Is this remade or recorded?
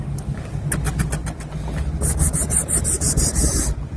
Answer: recorded